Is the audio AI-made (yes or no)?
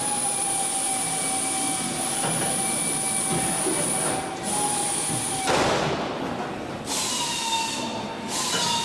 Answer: no